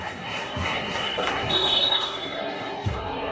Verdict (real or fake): fake